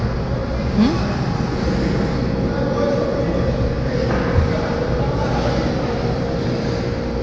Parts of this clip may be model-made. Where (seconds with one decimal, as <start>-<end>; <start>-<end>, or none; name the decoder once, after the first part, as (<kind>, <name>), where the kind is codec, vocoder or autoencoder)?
none